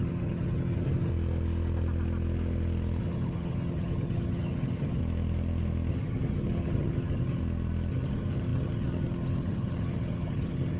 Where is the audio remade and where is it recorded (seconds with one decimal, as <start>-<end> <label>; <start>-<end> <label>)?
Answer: 0.0-1.1 remade; 1.1-3.0 recorded; 3.0-5.0 remade; 5.0-5.9 recorded; 5.9-7.4 remade; 7.4-7.9 recorded; 7.9-10.8 remade